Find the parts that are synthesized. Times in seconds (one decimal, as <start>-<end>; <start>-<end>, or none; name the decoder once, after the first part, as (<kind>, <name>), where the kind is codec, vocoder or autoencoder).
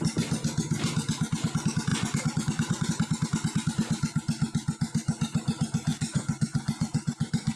1.9-2.9 (vocoder, Vocos); 5.9-7.6